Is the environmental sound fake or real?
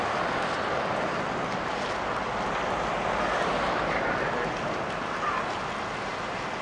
real